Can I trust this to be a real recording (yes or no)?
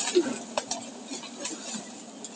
yes